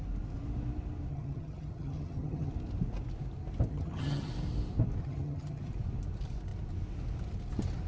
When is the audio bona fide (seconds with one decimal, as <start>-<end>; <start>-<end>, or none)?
0.0-1.1; 2.5-3.7; 4.3-5.0; 5.7-7.9